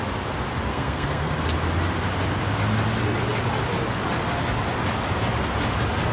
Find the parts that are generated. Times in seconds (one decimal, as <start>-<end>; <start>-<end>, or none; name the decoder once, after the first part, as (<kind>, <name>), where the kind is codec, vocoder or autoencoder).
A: 0.7-1.3 (codec, SNAC)